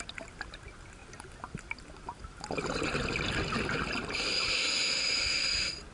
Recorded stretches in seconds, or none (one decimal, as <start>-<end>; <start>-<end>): 0.0-5.9